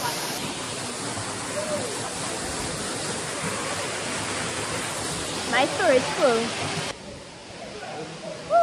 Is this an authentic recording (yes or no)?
yes